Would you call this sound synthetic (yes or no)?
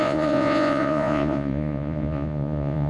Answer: yes